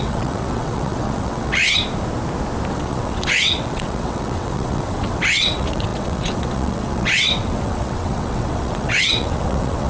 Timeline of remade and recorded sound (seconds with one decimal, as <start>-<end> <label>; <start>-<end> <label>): 0.0-1.6 remade; 1.6-2.7 recorded; 2.7-9.9 remade